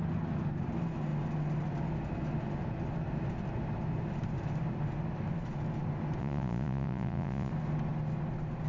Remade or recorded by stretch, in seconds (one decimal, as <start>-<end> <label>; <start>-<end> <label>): 0.0-6.2 recorded; 6.2-7.5 remade; 7.5-8.7 recorded